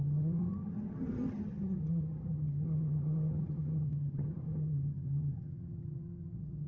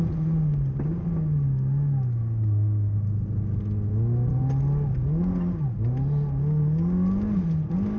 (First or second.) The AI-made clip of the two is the first